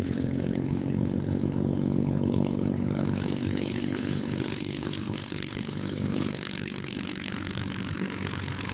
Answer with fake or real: fake